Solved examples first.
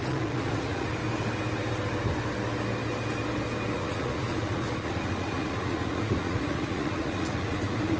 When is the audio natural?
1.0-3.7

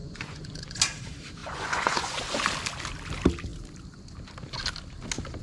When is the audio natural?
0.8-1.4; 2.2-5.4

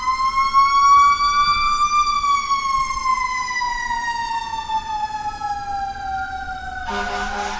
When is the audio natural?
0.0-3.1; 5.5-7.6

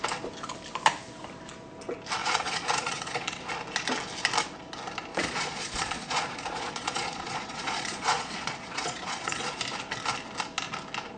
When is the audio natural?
0.0-2.2; 3.5-5.1; 9.6-11.2

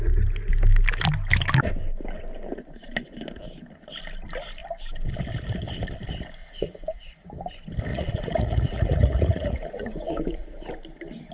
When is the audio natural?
0.0-6.4; 7.1-7.9; 10.7-11.3

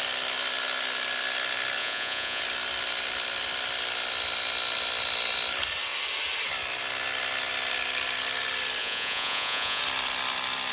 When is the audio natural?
0.0-1.8; 2.4-8.8; 9.8-10.7

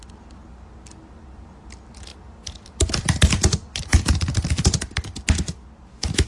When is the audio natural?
0.0-6.3